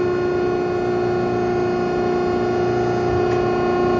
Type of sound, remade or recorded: recorded